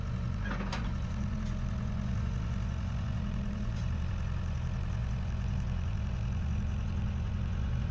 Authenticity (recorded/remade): remade